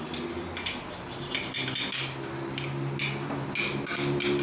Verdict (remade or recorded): recorded